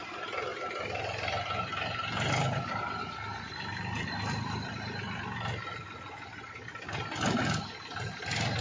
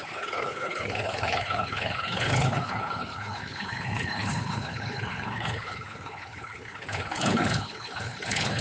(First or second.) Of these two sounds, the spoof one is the second